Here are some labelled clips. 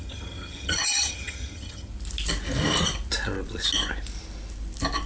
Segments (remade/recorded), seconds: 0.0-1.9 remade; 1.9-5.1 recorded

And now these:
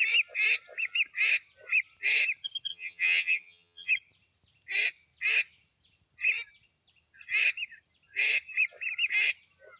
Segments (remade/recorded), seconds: 0.0-2.7 recorded; 2.7-3.9 remade; 3.9-9.8 recorded

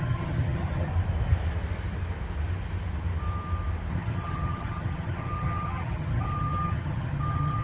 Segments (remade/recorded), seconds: 0.0-0.9 remade; 0.9-3.9 recorded; 3.9-7.6 remade